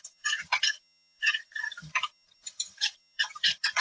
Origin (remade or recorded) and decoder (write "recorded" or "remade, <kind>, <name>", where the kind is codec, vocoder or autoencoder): remade, vocoder, HiFi-GAN